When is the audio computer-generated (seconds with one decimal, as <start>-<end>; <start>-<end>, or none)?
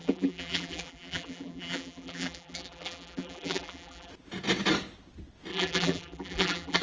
0.0-4.1; 5.5-6.8